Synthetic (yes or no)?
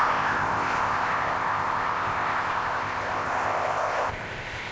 yes